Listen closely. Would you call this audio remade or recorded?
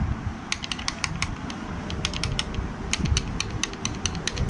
recorded